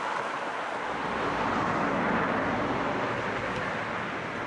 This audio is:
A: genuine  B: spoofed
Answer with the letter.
A